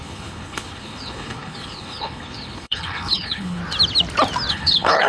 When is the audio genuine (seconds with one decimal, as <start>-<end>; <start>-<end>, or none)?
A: 3.6-4.5